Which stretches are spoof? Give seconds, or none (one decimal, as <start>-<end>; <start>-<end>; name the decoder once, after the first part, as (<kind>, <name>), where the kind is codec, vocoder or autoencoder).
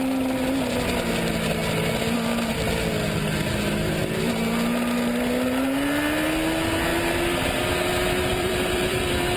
8.3-9.4 (vocoder, BigVGAN v2)